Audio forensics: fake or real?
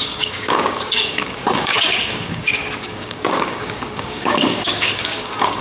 fake